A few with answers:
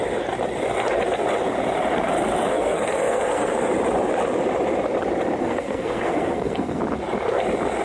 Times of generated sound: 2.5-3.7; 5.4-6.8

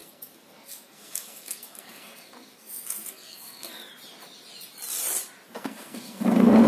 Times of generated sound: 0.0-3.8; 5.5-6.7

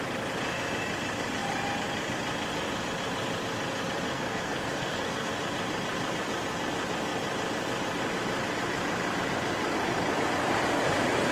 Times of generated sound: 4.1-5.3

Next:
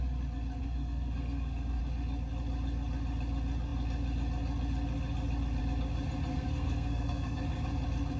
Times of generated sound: 0.6-1.8; 6.3-7.4